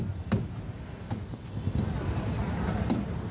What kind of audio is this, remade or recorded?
recorded